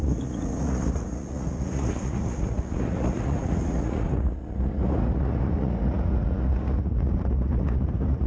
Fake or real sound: fake